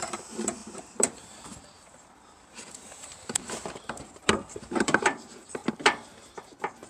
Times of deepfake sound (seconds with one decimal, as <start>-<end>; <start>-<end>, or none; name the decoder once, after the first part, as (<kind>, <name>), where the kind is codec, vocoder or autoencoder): 0.0-5.6 (vocoder, BigVGAN v2)